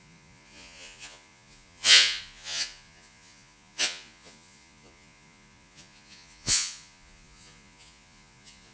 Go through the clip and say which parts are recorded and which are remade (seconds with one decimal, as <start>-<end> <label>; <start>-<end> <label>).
0.0-8.7 remade